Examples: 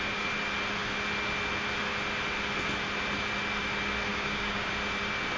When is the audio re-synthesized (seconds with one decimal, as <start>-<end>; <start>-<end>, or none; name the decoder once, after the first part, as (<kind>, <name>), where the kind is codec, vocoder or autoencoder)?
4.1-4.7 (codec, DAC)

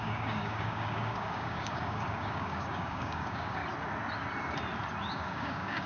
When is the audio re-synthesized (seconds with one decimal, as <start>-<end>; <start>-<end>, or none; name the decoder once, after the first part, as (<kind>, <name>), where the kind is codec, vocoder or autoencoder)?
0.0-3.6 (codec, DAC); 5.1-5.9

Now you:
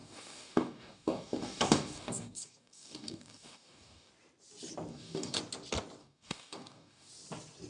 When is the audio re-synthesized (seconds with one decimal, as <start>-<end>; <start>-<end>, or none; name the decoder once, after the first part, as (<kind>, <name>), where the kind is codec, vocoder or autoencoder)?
0.0-4.1 (codec, DAC); 4.9-5.4; 6.0-7.1

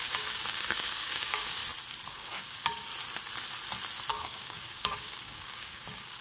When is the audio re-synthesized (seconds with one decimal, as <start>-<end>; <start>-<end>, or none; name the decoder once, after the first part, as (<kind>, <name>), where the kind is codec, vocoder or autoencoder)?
0.0-1.6 (codec, DAC); 2.1-2.9; 4.1-6.2

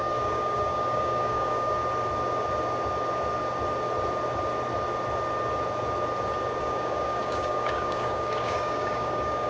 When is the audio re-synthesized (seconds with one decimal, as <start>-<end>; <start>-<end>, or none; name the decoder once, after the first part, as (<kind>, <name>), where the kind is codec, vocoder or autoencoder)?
0.0-1.8 (codec, DAC); 6.6-9.5

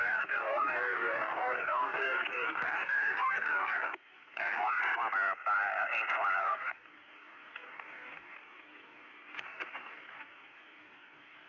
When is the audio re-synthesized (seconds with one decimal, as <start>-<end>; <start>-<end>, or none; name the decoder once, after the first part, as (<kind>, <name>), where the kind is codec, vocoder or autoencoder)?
0.0-4.8 (codec, DAC); 6.4-11.5